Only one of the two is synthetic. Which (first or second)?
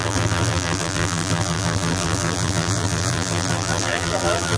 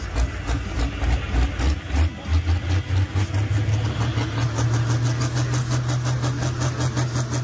first